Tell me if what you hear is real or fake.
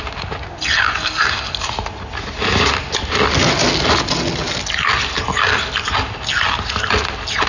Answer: real